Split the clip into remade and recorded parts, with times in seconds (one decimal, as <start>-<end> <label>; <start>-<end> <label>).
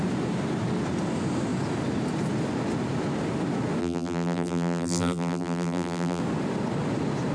0.0-3.8 recorded; 3.8-6.2 remade; 6.2-7.3 recorded